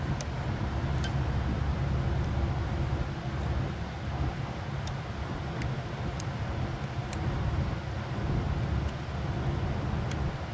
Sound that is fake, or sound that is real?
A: real